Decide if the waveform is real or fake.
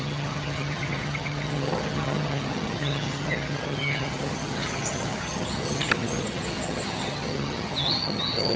fake